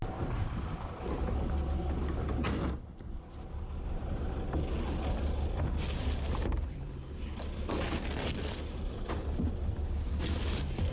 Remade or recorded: recorded